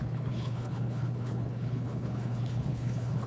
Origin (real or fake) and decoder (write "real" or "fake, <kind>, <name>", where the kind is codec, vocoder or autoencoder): fake, codec, HILCodec